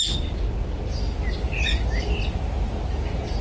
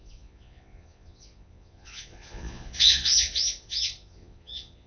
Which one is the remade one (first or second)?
second